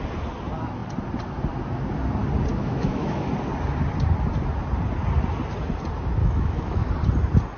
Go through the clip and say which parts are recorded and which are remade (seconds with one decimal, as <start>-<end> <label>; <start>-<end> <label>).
0.0-2.5 recorded; 2.5-3.3 remade; 3.3-6.2 recorded; 6.2-6.9 remade; 6.9-7.6 recorded